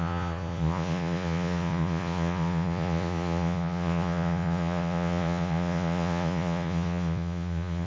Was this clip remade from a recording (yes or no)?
yes